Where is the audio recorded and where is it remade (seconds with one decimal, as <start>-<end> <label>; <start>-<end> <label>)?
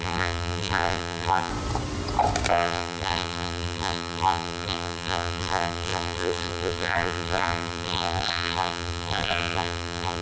0.0-1.5 remade; 1.5-2.5 recorded; 2.5-10.2 remade